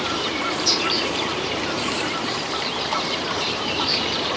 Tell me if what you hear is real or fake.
fake